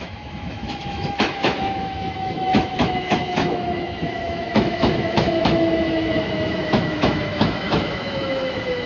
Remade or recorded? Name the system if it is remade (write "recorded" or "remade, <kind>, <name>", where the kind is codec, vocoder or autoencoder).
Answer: remade, autoencoder, DAC-VAE